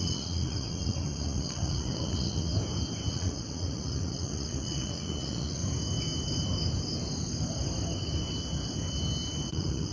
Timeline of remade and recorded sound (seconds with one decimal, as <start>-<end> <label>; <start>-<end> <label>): 0.0-2.5 remade; 2.5-3.1 recorded; 3.1-5.6 remade; 5.6-9.5 recorded; 9.5-9.9 remade

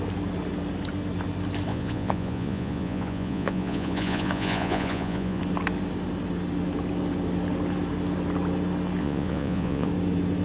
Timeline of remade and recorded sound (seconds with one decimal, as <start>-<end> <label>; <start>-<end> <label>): 0.0-1.7 recorded; 1.7-5.4 remade; 5.4-9.0 recorded; 9.0-9.9 remade; 9.9-10.4 recorded

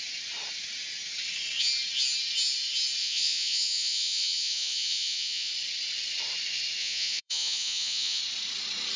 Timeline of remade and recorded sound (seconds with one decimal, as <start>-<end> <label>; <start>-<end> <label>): 0.0-3.0 recorded; 3.0-5.5 remade; 5.5-6.8 recorded; 6.8-8.2 remade; 8.2-9.0 recorded

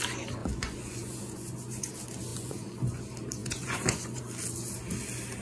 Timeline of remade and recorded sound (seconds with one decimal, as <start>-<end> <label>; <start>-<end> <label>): 0.0-0.4 recorded; 0.4-1.9 remade; 1.9-2.3 recorded; 2.3-3.0 remade; 3.0-3.4 recorded; 3.4-4.2 remade; 4.2-5.4 recorded